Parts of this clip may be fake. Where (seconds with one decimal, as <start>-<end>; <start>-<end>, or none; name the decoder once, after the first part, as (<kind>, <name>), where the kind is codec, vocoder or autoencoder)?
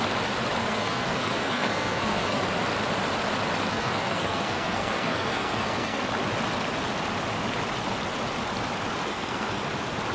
0.6-2.4 (codec, SNAC); 3.7-6.0; 9.1-9.6